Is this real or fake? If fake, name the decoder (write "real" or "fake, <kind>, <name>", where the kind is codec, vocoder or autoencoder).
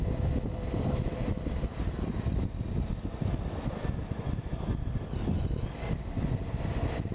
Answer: real